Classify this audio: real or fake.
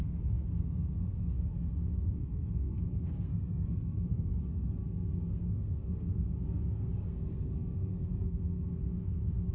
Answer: fake